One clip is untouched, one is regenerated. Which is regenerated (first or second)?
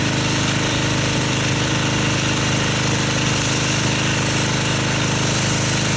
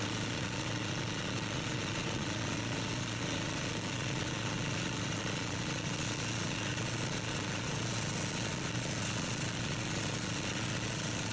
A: second